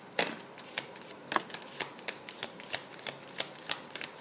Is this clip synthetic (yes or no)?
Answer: no